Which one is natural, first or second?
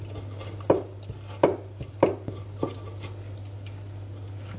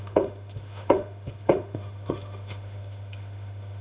first